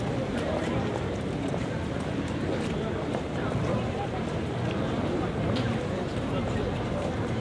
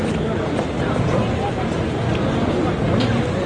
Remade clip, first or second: first